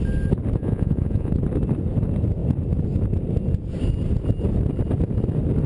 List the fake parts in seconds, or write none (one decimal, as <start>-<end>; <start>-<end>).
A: 0.6-1.3

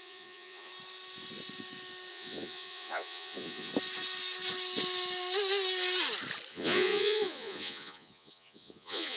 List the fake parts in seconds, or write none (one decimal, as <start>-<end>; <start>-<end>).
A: 0.0-0.7; 2.1-3.7; 6.5-9.2

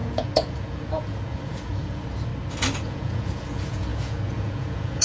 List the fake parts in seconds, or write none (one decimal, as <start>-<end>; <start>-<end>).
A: 0.0-2.3; 2.8-5.0

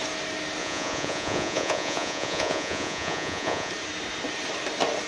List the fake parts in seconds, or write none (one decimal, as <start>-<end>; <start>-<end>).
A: 0.6-3.7

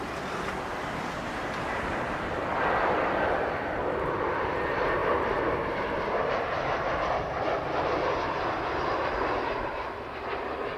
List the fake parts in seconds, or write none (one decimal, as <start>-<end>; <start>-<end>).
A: none